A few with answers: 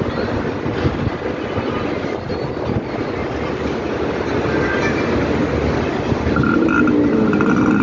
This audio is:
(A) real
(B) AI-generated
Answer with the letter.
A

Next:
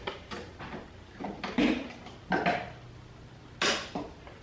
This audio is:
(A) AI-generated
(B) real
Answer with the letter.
B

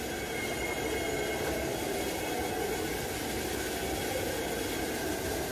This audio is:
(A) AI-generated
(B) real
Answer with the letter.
B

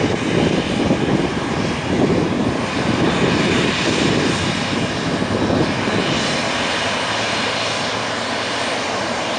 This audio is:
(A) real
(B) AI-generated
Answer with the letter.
A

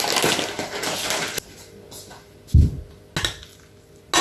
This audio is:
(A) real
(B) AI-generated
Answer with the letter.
A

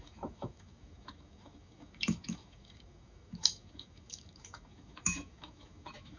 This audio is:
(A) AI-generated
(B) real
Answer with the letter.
A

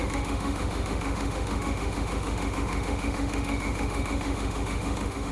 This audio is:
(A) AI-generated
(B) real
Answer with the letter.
A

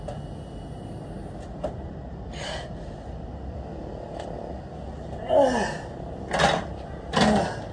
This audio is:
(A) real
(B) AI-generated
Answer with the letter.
A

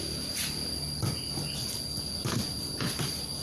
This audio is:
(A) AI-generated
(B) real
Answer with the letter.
B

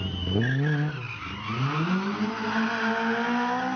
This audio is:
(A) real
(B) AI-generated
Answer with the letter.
A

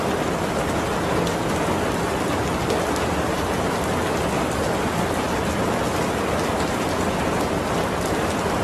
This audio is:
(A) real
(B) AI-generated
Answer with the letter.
A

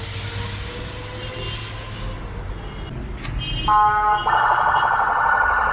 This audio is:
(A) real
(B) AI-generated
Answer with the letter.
A